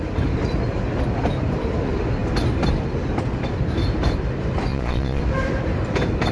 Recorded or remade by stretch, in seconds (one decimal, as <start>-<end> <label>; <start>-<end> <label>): 0.0-4.7 recorded; 4.7-5.2 remade; 5.2-6.3 recorded